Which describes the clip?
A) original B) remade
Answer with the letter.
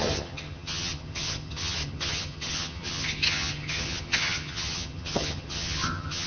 B